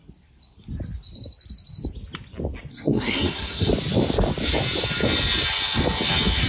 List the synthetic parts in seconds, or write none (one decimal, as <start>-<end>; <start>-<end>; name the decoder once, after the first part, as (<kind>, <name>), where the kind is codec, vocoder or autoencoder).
2.7-3.7 (codec, SNAC)